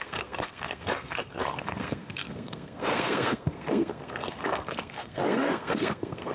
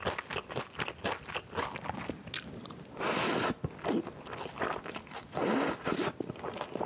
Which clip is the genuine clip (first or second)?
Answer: second